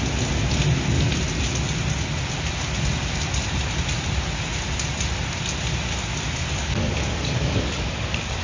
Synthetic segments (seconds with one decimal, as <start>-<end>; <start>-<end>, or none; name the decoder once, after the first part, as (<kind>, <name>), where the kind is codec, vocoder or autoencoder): 6.6-8.4 (codec, DAC)